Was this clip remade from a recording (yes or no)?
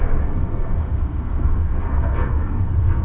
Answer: yes